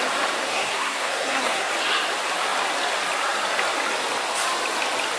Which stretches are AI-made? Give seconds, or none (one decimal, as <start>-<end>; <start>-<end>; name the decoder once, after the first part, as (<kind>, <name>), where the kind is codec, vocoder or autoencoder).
0.4-1.7 (codec, SNAC)